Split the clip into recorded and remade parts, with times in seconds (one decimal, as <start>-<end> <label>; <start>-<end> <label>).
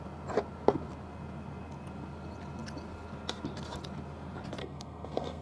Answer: 0.0-4.6 recorded; 4.6-5.4 remade